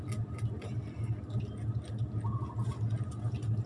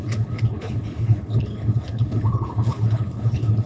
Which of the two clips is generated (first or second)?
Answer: second